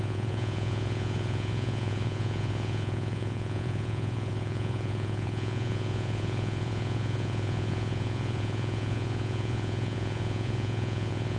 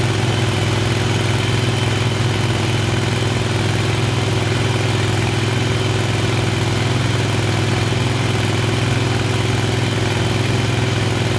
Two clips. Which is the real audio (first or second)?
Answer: second